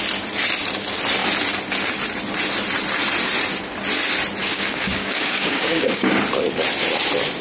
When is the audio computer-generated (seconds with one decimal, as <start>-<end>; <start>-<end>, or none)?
4.4-6.1